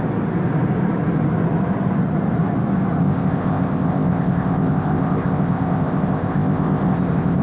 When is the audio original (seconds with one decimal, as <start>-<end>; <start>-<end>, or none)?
0.0-3.0